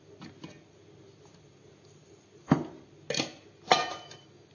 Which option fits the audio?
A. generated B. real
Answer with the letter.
B